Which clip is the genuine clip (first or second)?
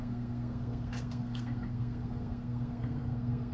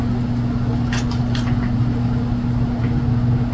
second